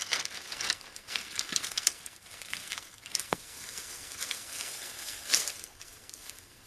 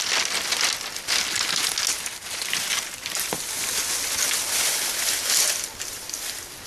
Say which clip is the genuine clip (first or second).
second